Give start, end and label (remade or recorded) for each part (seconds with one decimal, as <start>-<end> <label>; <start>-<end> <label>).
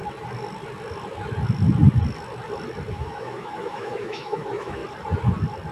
0.0-2.9 recorded; 2.9-4.8 remade; 4.8-5.7 recorded